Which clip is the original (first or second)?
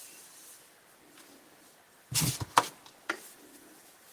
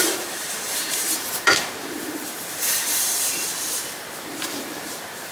first